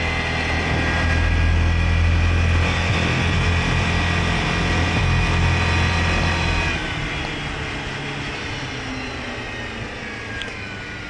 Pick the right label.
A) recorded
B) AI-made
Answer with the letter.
A